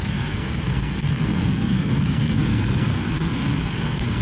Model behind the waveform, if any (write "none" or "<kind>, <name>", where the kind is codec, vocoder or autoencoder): codec, SNAC